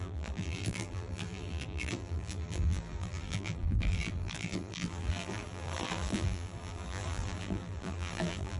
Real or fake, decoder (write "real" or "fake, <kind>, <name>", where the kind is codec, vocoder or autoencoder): fake, vocoder, BigVGAN v2